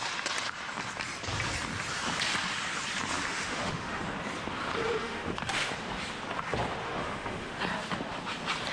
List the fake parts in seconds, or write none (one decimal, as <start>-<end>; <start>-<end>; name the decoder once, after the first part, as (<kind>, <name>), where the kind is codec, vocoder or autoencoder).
3.3-4.0 (autoencoder, DAC-VAE); 5.0-5.7; 6.8-7.6

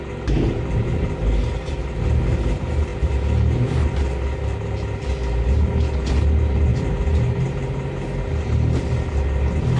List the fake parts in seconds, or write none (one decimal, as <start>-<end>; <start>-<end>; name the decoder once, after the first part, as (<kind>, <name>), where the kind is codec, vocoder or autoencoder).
none

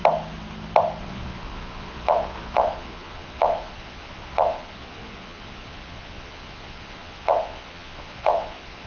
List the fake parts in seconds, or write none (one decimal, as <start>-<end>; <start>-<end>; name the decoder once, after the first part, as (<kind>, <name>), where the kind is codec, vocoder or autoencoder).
1.0-8.9 (vocoder, Vocos)

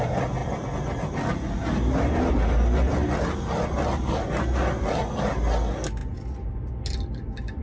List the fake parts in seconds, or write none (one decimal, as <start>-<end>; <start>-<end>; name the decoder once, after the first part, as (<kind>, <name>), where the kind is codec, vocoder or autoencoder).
none

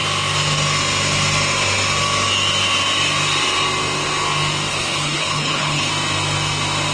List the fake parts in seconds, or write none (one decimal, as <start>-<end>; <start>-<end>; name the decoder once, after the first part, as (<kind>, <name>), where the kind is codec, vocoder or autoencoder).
4.7-5.9 (codec, HILCodec)

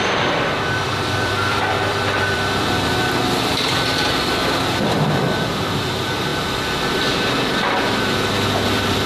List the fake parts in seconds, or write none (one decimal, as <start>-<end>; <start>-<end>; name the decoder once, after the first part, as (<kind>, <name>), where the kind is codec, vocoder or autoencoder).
0.0-9.1 (vocoder, BigVGAN v2)

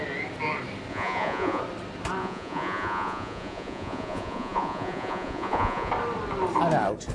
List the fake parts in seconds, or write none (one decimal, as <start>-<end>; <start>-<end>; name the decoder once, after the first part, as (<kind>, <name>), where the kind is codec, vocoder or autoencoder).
0.9-1.6 (vocoder, Vocos); 2.2-5.9